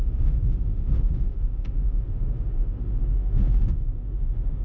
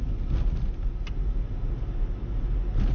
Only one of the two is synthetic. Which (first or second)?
first